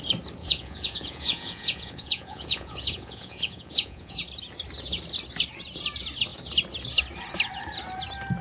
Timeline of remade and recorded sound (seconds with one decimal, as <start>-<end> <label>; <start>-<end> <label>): 0.0-0.4 recorded; 0.4-4.2 remade; 4.2-8.4 recorded